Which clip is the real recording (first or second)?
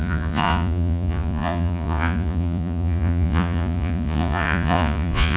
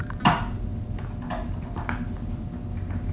second